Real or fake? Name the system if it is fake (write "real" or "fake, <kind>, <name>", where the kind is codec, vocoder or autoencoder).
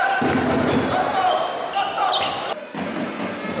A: real